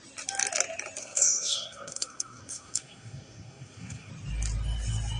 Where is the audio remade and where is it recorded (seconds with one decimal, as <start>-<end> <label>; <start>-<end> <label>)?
0.0-1.0 recorded; 1.0-4.1 remade; 4.1-5.2 recorded